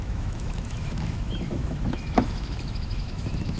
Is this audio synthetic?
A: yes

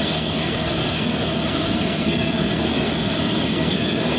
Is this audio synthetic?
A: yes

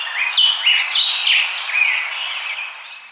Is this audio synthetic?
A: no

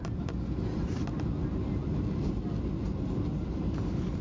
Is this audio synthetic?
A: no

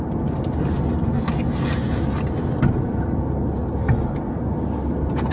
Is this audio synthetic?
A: no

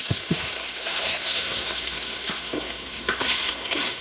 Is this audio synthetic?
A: yes